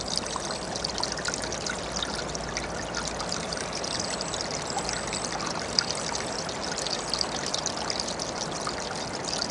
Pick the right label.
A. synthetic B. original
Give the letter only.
B